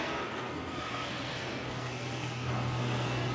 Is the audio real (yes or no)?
no